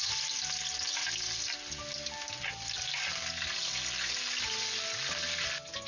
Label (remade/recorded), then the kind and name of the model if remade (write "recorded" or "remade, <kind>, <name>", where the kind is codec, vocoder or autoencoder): recorded